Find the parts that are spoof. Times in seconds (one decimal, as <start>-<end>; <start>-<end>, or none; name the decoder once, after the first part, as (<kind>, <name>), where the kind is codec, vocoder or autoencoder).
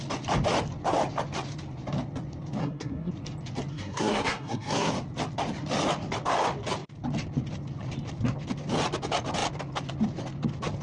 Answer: 2.6-3.1 (codec, SNAC); 3.7-4.9